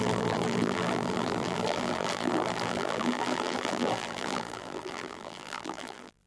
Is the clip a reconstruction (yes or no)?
yes